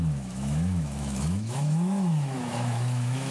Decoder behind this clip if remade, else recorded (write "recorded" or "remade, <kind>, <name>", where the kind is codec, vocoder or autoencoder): remade, autoencoder, DAC-VAE